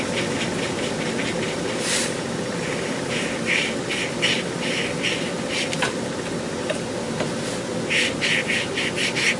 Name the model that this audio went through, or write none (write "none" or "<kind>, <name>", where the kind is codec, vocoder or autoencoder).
none